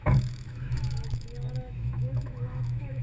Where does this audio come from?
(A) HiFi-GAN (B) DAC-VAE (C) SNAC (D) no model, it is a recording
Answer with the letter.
B